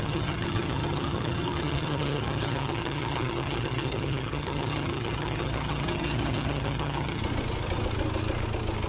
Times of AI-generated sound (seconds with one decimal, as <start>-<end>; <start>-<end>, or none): 0.0-7.2